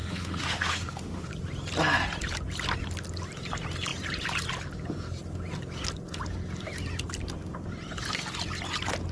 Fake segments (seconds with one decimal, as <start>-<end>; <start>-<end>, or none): 0.0-1.3